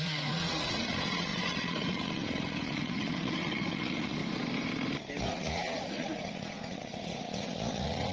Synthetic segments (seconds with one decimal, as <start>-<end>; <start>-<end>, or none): 0.0-4.2; 5.2-8.1